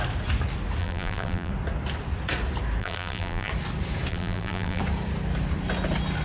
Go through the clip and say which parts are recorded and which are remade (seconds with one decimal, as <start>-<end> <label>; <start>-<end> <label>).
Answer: 0.0-0.8 recorded; 0.8-1.5 remade; 1.5-2.8 recorded; 2.8-3.5 remade; 3.5-4.1 recorded; 4.1-4.8 remade; 4.8-6.2 recorded

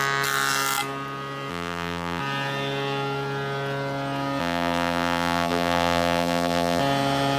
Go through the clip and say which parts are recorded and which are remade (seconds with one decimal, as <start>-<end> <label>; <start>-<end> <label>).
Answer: 0.0-1.5 recorded; 1.5-2.2 remade; 2.2-4.4 recorded; 4.4-6.8 remade; 6.8-7.4 recorded

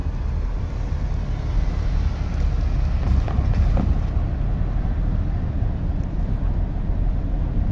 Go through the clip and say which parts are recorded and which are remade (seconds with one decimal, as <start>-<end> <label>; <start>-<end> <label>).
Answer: 0.0-7.7 recorded

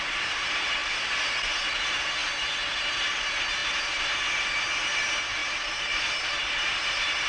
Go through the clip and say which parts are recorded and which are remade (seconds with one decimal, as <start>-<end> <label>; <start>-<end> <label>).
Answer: 0.0-7.3 recorded

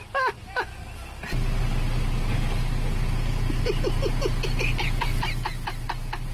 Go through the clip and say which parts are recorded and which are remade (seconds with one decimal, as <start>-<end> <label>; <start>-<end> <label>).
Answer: 0.0-6.3 recorded

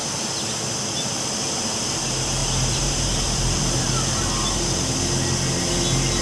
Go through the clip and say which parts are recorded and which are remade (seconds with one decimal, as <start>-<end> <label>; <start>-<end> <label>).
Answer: 0.0-2.4 recorded; 2.4-3.9 remade; 3.9-6.2 recorded

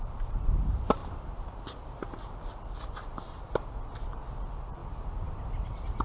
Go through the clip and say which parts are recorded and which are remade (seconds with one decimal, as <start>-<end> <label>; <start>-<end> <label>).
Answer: 0.0-1.0 recorded; 1.0-3.4 remade; 3.4-4.8 recorded; 4.8-5.6 remade; 5.6-6.0 recorded

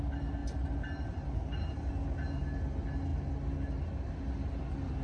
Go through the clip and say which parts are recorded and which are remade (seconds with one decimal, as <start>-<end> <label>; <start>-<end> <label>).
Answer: 0.0-0.4 recorded; 0.4-1.9 remade; 1.9-5.0 recorded